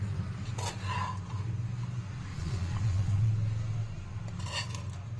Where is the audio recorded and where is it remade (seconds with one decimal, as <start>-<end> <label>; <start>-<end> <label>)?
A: 0.0-2.3 recorded; 2.3-3.3 remade; 3.3-5.2 recorded